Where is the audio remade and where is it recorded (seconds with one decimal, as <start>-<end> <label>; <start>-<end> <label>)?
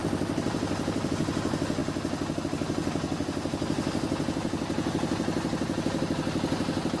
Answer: 0.0-1.1 remade; 1.1-7.0 recorded